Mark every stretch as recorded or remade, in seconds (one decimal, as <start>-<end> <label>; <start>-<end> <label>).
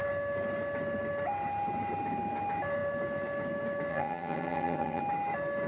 0.0-3.9 recorded; 3.9-5.0 remade; 5.0-5.7 recorded